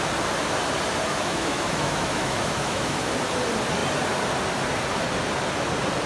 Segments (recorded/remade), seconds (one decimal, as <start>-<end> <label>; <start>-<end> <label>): 0.0-1.1 recorded; 1.1-3.1 remade; 3.1-6.1 recorded